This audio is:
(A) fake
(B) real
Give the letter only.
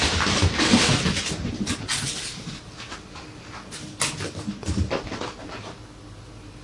B